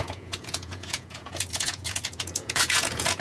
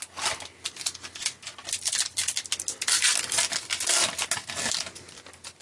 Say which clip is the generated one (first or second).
first